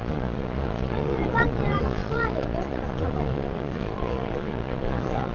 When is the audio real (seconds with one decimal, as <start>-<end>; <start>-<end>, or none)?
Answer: none